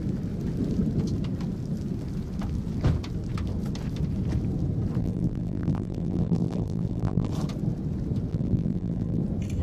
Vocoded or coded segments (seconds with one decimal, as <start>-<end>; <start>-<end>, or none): 5.0-7.3; 8.3-9.2